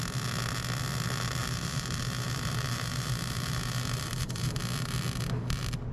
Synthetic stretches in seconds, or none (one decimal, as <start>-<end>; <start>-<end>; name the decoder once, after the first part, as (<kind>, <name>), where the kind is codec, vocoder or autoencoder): 1.4-4.6 (vocoder, BigVGAN v2)